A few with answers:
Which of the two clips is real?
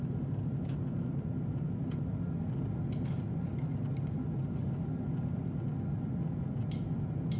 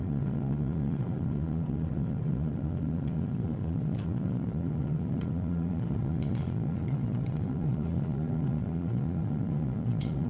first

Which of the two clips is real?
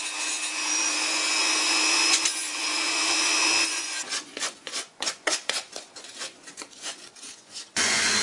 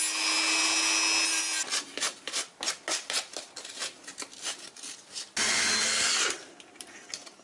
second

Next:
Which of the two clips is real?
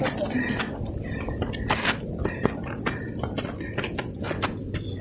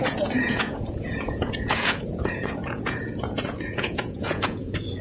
first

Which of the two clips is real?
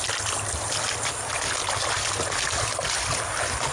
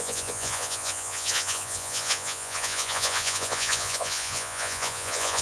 first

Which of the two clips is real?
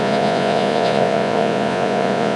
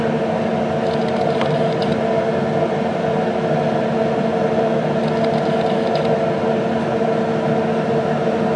second